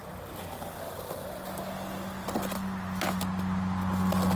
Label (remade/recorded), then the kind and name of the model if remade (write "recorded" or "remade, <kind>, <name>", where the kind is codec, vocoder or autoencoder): recorded